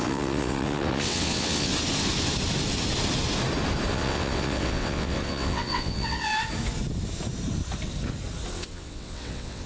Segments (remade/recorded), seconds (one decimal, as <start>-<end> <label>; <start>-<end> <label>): 0.0-1.7 remade; 1.7-3.9 recorded; 3.9-6.3 remade; 6.3-8.5 recorded; 8.5-9.7 remade